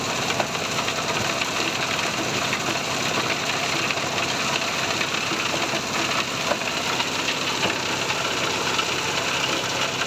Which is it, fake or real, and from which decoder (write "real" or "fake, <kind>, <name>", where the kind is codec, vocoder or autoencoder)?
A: real